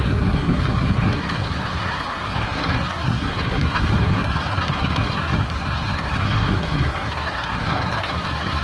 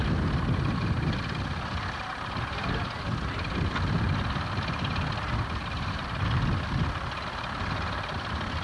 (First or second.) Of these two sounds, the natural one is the second